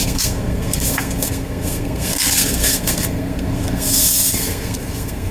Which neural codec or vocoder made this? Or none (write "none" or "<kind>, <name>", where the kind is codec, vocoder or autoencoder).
codec, SNAC